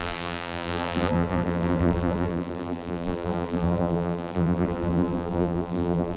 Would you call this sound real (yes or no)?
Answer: no